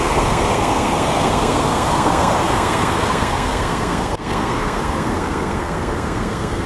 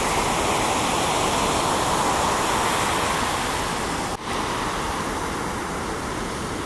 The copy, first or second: first